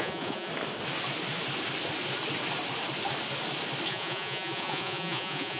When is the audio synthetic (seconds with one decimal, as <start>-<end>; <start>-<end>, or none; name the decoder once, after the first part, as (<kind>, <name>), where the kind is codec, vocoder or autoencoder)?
0.0-0.5 (vocoder, Vocos); 3.9-5.6